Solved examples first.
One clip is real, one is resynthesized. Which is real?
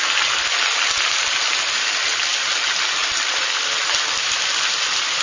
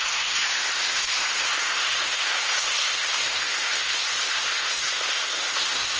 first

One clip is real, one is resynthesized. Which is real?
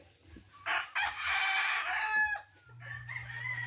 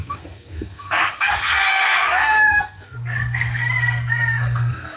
first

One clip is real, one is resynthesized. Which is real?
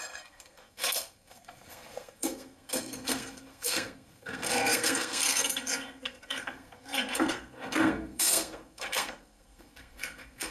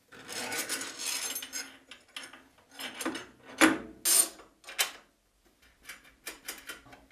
second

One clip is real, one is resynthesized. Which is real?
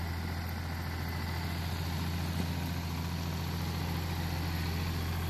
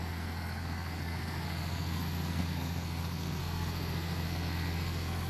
first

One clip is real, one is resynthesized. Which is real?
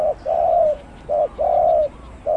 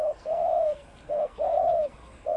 first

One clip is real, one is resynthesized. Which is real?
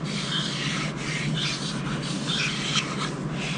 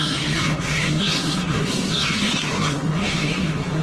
first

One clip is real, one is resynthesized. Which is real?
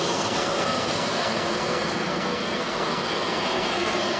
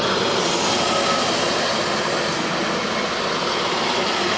second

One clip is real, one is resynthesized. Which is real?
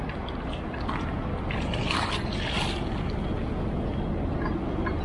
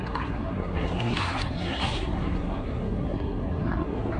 first